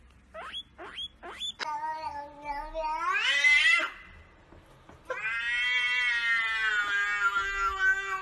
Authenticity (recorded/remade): recorded